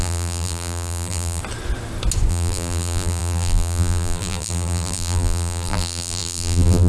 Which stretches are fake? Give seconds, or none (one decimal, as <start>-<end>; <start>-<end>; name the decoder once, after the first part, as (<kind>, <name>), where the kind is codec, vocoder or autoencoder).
0.0-1.4 (vocoder, BigVGAN v2); 2.3-6.9